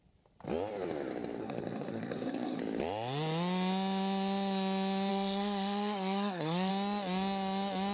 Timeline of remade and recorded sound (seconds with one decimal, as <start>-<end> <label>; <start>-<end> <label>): 0.0-1.4 recorded; 1.4-2.6 remade; 2.6-5.1 recorded; 5.1-6.7 remade; 6.7-7.9 recorded